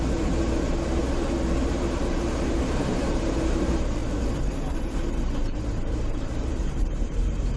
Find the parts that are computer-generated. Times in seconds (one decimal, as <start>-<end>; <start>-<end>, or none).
0.0-1.0; 1.7-7.6